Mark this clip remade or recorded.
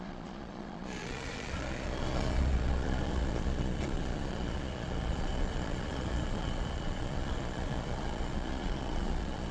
remade